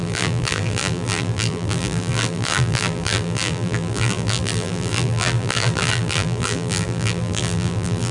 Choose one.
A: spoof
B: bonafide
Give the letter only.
A